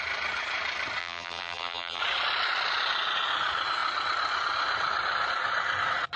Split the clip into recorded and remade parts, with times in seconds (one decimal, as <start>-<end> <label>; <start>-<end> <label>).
0.0-1.0 recorded; 1.0-2.0 remade; 2.0-6.2 recorded